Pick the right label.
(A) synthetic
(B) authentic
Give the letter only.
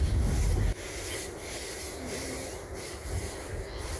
B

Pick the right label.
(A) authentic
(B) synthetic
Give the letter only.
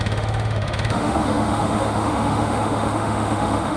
B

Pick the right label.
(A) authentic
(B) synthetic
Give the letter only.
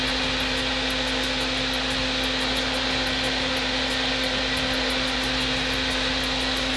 A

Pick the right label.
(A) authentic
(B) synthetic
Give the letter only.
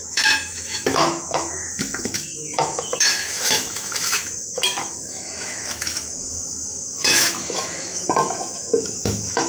B